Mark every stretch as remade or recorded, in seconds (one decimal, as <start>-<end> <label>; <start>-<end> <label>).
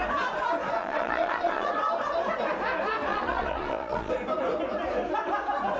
0.0-0.8 recorded; 0.8-1.7 remade; 1.7-3.1 recorded; 3.1-4.1 remade; 4.1-5.8 recorded